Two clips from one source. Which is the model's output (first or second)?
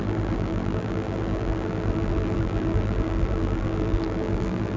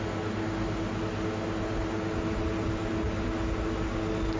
first